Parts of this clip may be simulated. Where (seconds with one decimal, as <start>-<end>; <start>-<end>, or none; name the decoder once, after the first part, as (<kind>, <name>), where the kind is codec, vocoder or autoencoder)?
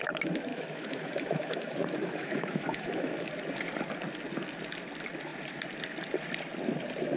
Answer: 0.5-3.3 (autoencoder, DAC-VAE)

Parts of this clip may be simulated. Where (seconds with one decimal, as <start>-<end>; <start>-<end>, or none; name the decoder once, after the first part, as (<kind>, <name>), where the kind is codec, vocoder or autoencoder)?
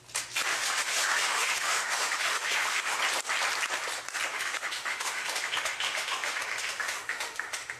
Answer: 0.5-3.0 (autoencoder, DAC-VAE); 4.3-7.8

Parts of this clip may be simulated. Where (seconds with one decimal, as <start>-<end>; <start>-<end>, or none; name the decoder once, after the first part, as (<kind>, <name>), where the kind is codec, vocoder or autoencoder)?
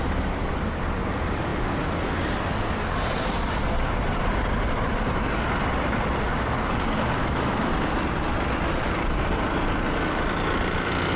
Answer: 7.2-7.7 (autoencoder, DAC-VAE)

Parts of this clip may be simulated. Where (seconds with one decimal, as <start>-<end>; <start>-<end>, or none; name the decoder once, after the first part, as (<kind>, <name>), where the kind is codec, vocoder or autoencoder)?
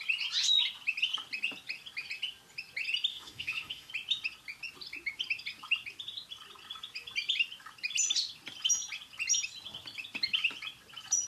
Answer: 3.1-3.9 (autoencoder, DAC-VAE)